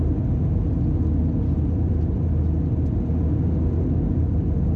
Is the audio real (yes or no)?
yes